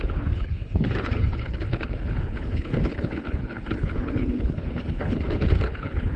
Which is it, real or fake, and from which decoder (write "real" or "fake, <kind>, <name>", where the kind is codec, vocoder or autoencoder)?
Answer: fake, codec, HILCodec